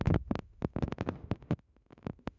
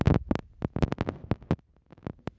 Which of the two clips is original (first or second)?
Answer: second